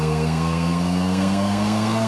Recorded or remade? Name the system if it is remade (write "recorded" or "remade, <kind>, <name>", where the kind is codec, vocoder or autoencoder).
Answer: remade, codec, SNAC